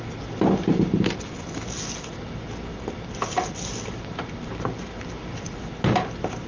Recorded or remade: recorded